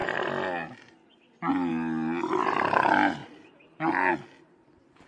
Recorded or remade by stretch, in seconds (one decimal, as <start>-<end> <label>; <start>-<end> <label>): 0.0-3.2 recorded; 3.2-4.1 remade; 4.1-5.1 recorded